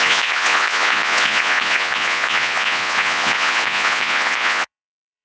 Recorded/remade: remade